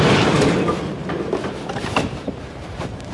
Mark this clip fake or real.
fake